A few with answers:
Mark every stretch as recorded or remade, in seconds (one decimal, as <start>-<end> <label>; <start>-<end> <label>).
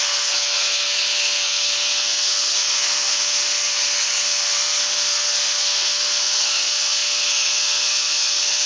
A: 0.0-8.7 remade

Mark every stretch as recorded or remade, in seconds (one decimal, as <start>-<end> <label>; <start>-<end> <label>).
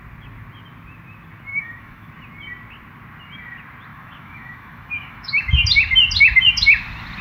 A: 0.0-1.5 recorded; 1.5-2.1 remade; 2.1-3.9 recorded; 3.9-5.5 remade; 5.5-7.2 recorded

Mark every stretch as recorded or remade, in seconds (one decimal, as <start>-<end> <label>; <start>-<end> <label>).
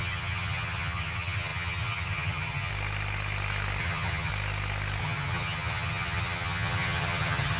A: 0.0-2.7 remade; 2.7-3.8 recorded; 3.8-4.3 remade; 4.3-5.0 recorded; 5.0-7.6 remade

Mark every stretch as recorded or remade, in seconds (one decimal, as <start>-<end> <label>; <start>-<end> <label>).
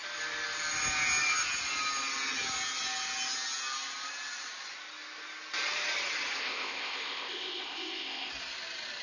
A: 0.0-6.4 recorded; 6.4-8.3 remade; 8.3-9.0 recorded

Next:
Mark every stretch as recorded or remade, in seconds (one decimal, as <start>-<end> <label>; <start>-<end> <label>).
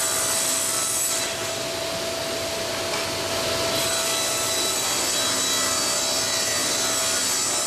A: 0.0-7.7 recorded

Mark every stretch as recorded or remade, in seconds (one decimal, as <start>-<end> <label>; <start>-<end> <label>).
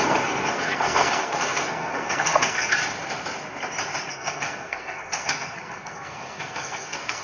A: 0.0-2.8 remade; 2.8-4.1 recorded; 4.1-7.2 remade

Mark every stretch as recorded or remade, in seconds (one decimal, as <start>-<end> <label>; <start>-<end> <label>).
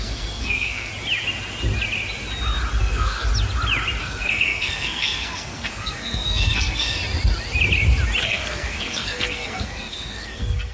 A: 0.0-0.9 remade; 0.9-2.8 recorded; 2.8-3.3 remade; 3.3-4.0 recorded; 4.0-7.0 remade; 7.0-8.2 recorded; 8.2-10.7 remade